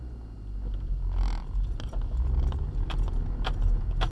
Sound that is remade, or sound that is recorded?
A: recorded